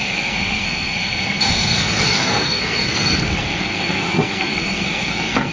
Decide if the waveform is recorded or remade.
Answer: remade